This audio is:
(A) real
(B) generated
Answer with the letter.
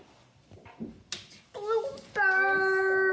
A